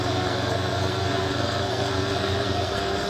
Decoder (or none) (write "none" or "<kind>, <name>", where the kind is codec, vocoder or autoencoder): codec, SNAC